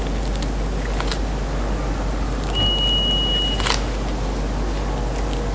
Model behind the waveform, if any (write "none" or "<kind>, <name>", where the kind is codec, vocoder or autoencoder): none